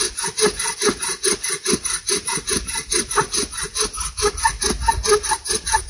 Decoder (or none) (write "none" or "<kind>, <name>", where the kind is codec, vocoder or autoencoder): none